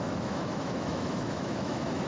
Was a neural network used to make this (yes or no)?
yes